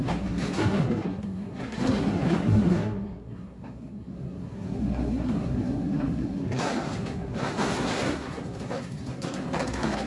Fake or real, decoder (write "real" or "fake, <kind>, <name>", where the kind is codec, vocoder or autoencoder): fake, codec, SNAC